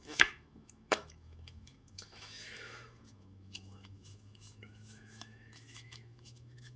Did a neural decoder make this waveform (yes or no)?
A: yes